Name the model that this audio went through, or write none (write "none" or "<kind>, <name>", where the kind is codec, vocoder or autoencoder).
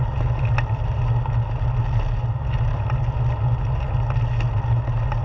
none